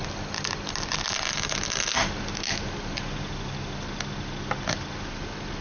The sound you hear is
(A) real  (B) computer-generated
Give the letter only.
A